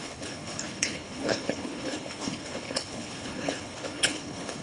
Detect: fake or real fake